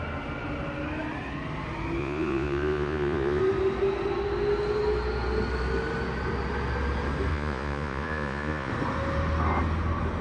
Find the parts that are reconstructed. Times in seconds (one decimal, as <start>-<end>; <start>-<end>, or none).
2.0-3.4; 7.3-8.7